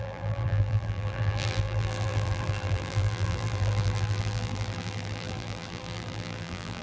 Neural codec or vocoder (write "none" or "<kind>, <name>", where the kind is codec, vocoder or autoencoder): vocoder, BigVGAN v2